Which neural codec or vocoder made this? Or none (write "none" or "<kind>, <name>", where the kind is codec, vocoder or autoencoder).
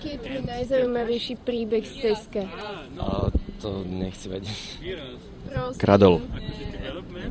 vocoder, BigVGAN v2